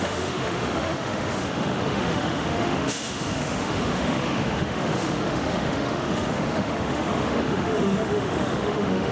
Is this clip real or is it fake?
fake